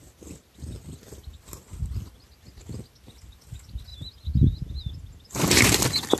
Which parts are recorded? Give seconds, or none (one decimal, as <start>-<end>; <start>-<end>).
0.0-6.2